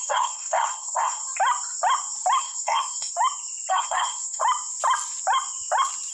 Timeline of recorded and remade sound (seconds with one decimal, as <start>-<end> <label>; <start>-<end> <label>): 0.0-1.2 remade; 1.2-2.4 recorded; 2.4-3.1 remade; 3.1-3.7 recorded; 3.7-4.4 remade; 4.4-6.1 recorded